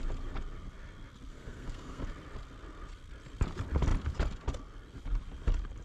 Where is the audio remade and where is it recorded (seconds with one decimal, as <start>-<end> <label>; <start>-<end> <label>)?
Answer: 0.0-1.3 recorded; 1.3-2.0 remade; 2.0-5.8 recorded